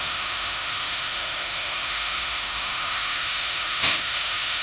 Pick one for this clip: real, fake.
fake